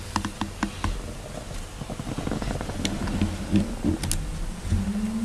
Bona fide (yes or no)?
yes